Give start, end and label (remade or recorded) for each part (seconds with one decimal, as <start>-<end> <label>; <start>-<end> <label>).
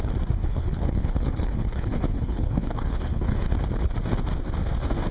0.0-0.4 recorded; 0.4-3.5 remade; 3.5-5.1 recorded